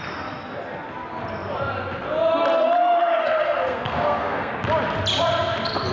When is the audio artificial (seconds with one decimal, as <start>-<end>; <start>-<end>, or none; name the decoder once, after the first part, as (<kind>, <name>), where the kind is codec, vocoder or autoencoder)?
3.2-4.5 (codec, SNAC)